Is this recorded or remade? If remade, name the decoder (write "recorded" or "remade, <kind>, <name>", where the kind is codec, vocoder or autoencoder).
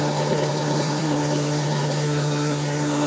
remade, codec, SNAC